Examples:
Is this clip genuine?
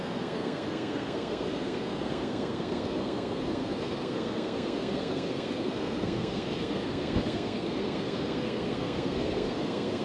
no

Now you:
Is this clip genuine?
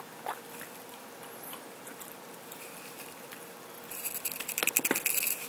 yes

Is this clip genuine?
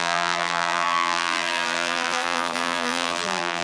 no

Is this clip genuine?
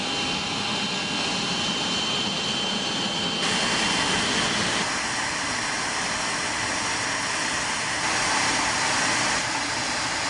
yes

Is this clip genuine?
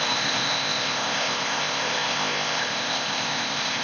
no